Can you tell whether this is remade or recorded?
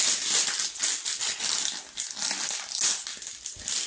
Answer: recorded